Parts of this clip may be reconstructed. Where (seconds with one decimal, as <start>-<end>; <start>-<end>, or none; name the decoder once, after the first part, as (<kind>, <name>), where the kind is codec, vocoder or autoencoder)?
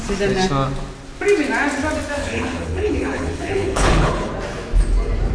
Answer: 2.2-4.3 (codec, HILCodec)